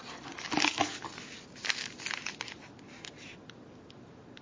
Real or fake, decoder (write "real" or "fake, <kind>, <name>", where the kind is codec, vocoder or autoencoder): real